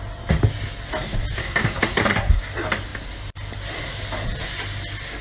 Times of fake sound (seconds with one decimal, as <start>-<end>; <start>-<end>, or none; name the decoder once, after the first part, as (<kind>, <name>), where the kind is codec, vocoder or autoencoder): 1.4-2.4 (codec, SNAC)